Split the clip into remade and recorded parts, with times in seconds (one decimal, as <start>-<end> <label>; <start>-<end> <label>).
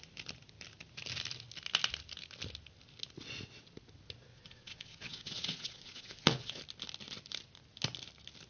0.0-4.3 recorded; 4.3-6.6 remade; 6.6-8.5 recorded